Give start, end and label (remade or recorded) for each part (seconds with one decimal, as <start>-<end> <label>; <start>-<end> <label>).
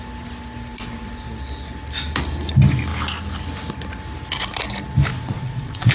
0.0-5.1 recorded; 5.1-5.9 remade